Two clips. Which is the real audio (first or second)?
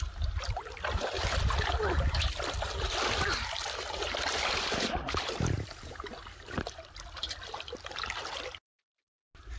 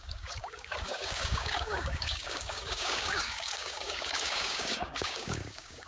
first